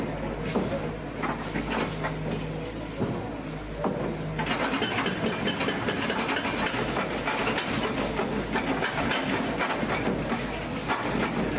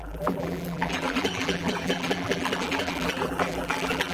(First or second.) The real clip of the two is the first